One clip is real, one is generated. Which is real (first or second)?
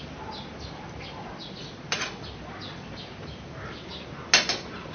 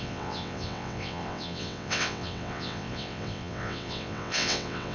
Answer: first